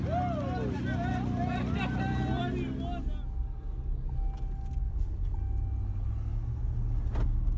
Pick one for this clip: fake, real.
real